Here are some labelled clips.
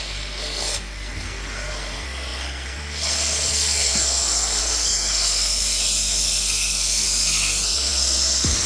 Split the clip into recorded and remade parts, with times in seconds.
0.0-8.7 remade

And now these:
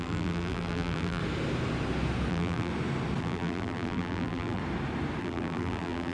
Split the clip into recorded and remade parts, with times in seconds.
0.0-1.2 remade; 1.2-2.3 recorded; 2.3-2.7 remade; 2.7-3.2 recorded; 3.2-4.6 remade; 4.6-5.2 recorded; 5.2-6.1 remade

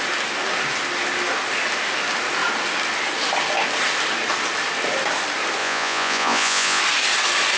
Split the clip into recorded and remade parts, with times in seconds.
0.0-5.6 recorded; 5.6-6.8 remade; 6.8-7.6 recorded

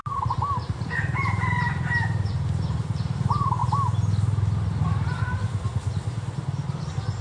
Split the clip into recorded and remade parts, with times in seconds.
0.0-3.6 remade; 3.6-6.8 recorded; 6.8-7.2 remade

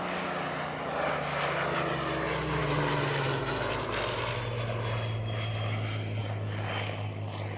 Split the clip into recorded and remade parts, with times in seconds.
0.0-2.6 recorded; 2.6-4.3 remade; 4.3-7.6 recorded